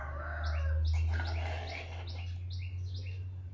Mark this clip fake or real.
real